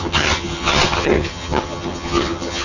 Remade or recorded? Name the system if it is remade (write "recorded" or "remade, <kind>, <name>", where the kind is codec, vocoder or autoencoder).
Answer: remade, vocoder, HiFi-GAN